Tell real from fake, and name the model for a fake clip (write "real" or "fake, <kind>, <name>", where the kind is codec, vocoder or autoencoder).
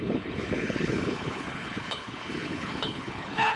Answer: fake, codec, HILCodec